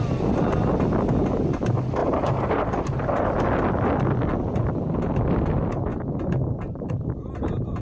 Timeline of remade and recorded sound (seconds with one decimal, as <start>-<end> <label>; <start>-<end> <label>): 0.0-2.0 recorded; 2.0-3.3 remade; 3.3-5.9 recorded; 5.9-6.9 remade; 6.9-7.8 recorded